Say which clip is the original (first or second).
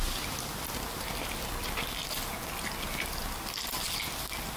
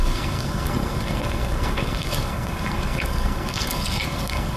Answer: first